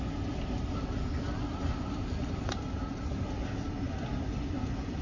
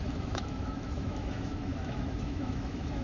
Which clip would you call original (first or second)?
first